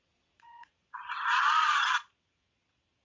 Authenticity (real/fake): fake